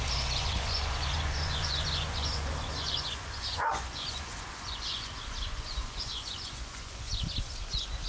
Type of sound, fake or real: fake